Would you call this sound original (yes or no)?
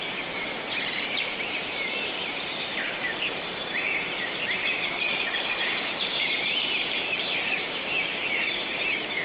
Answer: no